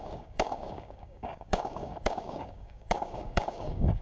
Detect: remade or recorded remade